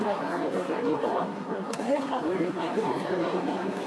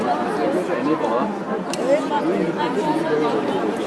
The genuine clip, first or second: second